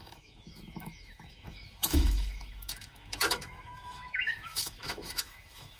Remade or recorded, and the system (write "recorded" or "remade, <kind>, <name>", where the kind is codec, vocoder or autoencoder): remade, autoencoder, DAC-VAE